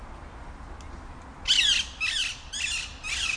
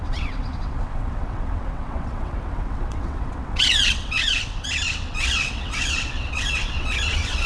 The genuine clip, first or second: first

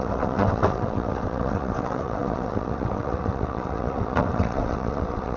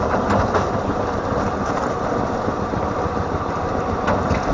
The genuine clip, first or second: second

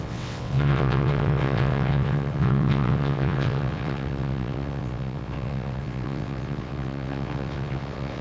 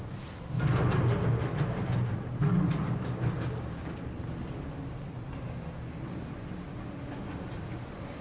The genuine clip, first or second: second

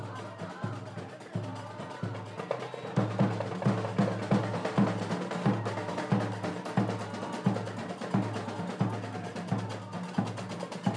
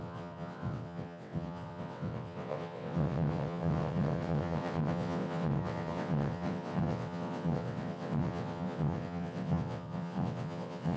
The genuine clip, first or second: first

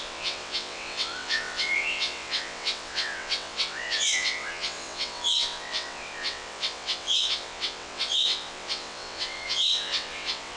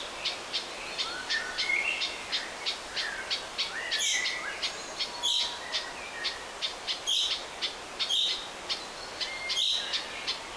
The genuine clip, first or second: second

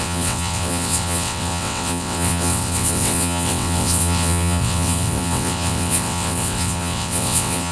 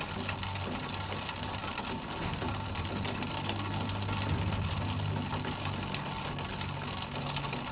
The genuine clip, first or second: second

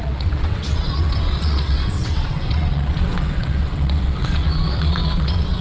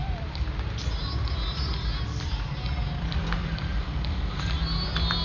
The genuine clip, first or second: second